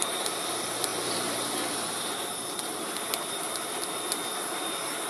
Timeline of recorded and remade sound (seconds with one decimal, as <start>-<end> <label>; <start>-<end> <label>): 0.0-0.9 recorded; 0.9-4.0 remade; 4.0-5.1 recorded